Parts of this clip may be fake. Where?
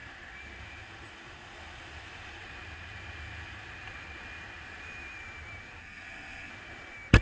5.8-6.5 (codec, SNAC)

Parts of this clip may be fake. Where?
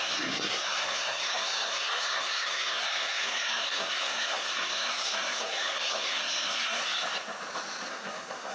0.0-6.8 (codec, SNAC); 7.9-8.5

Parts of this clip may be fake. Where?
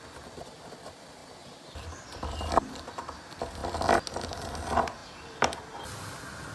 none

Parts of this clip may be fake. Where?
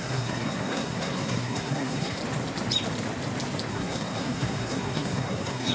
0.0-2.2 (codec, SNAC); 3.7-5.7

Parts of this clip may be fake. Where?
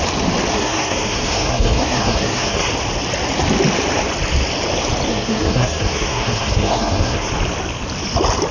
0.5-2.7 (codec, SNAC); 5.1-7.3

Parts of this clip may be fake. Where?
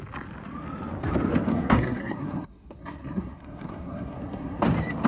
1.5-4.6 (codec, SNAC)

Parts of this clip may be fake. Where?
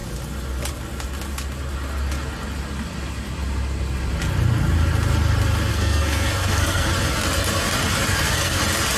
5.7-6.9 (codec, SNAC); 8.1-8.6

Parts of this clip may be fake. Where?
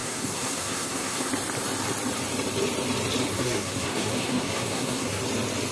0.0-1.3 (codec, SNAC); 3.3-5.2